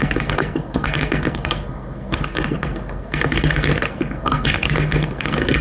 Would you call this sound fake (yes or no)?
yes